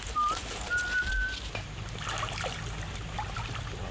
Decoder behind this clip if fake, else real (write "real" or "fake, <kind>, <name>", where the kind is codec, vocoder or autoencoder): real